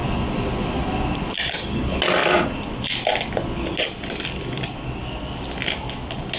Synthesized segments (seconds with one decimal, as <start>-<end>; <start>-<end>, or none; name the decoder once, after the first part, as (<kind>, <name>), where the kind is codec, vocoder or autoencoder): 0.0-0.5 (vocoder, BigVGAN v2)